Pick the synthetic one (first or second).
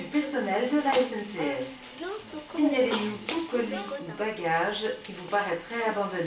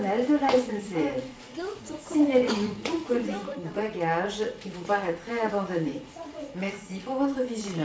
second